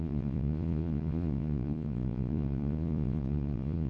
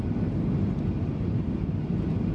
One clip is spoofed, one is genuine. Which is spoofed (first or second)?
first